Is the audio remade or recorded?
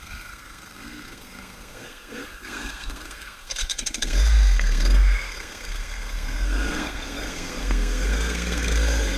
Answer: remade